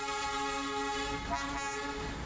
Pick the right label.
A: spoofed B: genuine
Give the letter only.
B